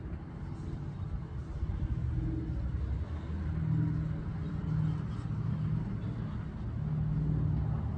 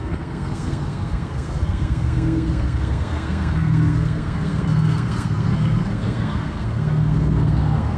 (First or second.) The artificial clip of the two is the second